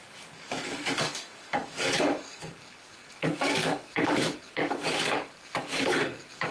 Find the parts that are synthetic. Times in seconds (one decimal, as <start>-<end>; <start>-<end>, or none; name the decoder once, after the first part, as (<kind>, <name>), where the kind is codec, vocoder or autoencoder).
0.0-6.5 (codec, DAC)